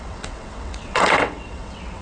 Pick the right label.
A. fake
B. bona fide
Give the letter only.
A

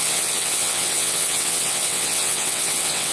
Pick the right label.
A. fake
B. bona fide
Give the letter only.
A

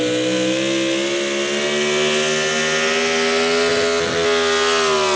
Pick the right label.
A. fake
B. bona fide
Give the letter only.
B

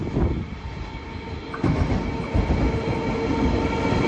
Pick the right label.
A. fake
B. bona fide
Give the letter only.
B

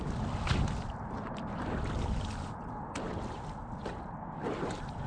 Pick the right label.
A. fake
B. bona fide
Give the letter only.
B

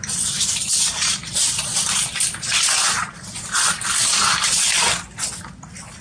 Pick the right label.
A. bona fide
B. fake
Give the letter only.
A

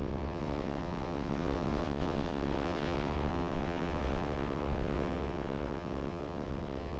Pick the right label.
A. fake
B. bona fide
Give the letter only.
A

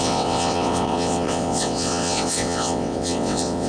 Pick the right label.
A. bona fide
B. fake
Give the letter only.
B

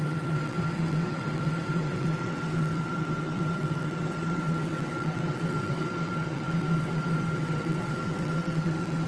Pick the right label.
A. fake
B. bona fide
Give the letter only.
A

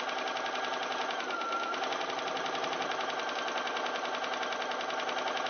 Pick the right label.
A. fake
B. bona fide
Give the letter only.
B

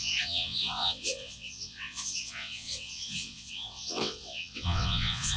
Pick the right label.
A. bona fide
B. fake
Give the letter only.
B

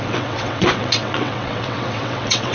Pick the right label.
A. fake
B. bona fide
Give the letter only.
A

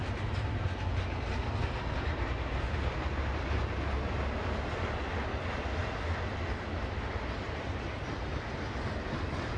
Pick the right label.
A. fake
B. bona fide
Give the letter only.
B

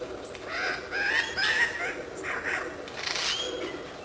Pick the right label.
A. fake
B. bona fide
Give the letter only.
B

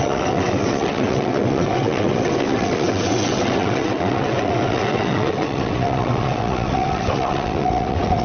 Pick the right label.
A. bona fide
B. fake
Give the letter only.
B